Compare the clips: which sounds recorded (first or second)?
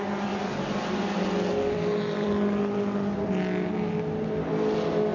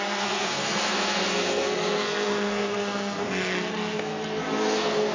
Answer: first